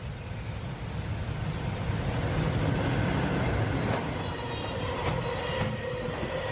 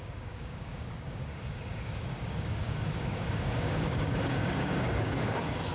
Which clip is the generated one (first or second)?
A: second